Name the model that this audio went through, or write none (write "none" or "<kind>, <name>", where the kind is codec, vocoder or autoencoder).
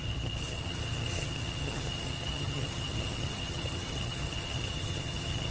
vocoder, HiFi-GAN